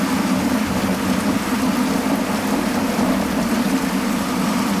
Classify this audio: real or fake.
real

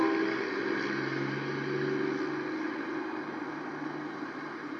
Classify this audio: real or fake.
real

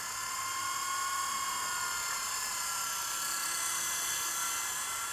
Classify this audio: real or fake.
real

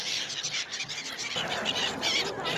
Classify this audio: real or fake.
real